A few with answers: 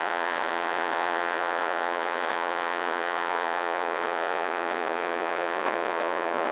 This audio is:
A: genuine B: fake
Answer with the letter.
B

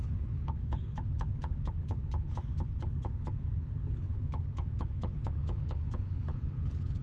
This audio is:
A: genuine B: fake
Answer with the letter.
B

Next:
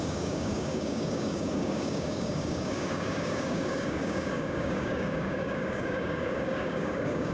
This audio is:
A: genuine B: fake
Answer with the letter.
B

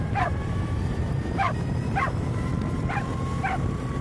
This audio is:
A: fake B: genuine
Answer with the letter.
A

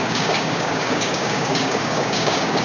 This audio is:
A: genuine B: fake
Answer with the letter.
B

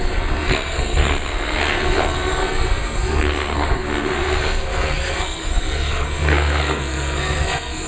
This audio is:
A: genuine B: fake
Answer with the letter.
B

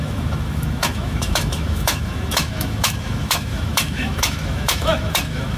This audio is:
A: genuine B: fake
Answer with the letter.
B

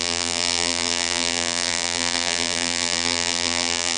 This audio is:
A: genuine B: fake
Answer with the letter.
B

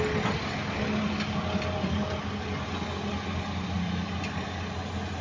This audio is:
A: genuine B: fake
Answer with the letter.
A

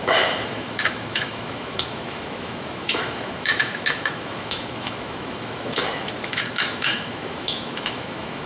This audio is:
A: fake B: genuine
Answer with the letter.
A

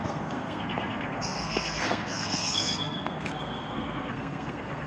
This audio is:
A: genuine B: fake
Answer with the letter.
B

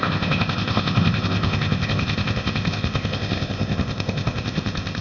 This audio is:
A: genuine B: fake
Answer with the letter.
B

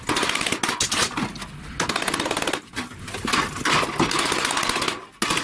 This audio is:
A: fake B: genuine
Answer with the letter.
B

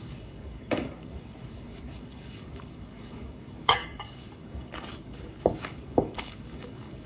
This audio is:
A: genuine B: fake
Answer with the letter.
B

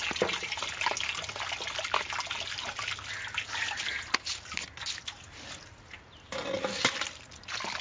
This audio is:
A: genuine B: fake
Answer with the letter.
A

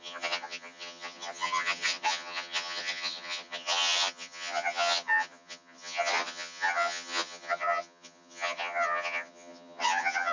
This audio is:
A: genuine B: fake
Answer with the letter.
B